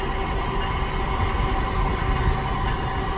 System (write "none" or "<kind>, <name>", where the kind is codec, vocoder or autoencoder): none